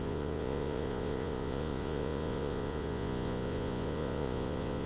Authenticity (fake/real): fake